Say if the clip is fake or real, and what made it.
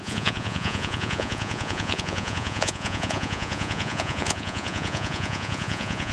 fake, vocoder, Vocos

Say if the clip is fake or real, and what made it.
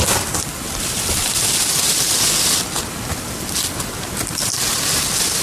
real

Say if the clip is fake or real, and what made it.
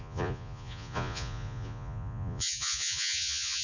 fake, vocoder, Vocos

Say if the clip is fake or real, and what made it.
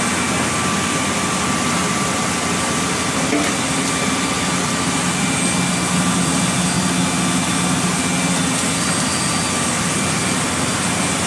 real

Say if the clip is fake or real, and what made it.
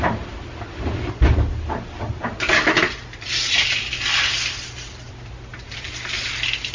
real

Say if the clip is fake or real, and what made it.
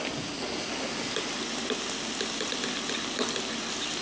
real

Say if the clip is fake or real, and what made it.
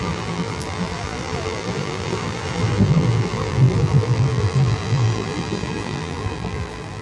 fake, vocoder, BigVGAN v2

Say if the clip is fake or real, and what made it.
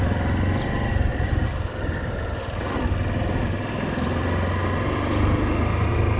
real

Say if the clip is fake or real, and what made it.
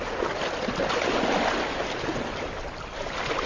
real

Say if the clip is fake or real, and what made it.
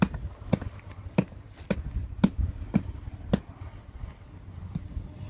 real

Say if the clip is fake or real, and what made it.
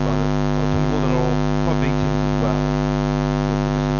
real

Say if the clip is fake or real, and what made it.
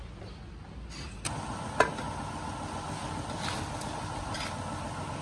real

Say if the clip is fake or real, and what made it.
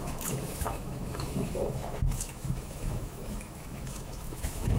fake, autoencoder, DAC-VAE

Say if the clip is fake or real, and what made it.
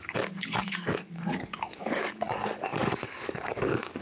fake, codec, DAC